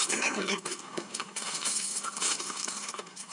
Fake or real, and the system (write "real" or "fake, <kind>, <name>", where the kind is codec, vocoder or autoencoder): fake, codec, SNAC